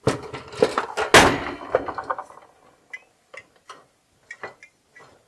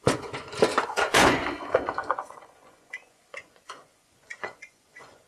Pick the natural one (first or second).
first